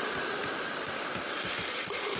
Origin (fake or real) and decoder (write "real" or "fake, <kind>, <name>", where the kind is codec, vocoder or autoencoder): fake, vocoder, BigVGAN v2